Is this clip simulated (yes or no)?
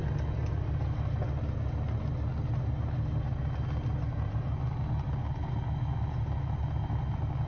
no